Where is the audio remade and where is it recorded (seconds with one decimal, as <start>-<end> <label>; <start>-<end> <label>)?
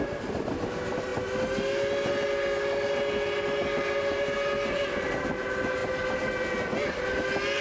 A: 0.0-7.6 recorded